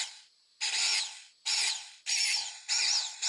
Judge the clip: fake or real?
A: real